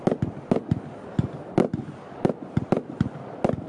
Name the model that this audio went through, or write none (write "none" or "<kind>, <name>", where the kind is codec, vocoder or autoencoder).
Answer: none